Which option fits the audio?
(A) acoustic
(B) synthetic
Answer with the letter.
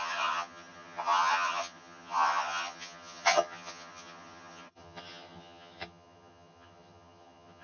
B